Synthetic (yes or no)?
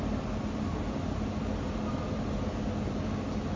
no